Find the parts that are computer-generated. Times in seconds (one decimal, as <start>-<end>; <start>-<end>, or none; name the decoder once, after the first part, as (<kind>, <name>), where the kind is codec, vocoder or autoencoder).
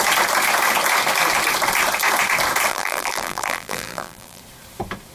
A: 2.7-4.4 (vocoder, BigVGAN v2)